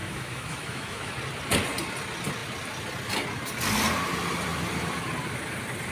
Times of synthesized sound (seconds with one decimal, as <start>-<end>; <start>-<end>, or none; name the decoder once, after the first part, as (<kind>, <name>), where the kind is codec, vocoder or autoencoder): 0.0-1.1 (autoencoder, DAC-VAE)